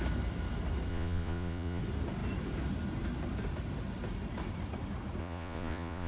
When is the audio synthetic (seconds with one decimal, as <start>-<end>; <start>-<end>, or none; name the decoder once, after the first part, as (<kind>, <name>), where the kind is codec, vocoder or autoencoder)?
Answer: 0.9-1.8 (vocoder, Vocos); 5.2-6.1